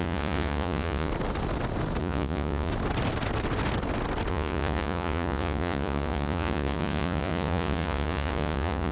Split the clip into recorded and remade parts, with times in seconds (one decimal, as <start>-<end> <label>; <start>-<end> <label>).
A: 0.0-1.1 remade; 1.1-2.0 recorded; 2.0-2.7 remade; 2.7-4.3 recorded; 4.3-8.9 remade